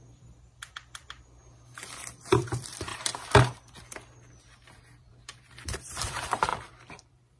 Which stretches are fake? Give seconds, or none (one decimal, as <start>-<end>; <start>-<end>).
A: 0.0-2.9; 5.0-7.4